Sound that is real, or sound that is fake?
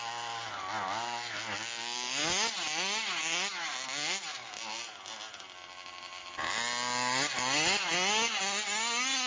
real